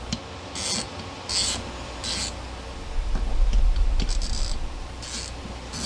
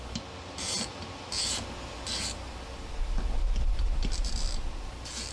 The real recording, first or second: first